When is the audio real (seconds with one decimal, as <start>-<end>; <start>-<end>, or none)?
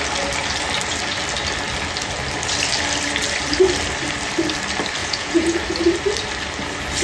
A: 0.0-5.0; 5.6-7.0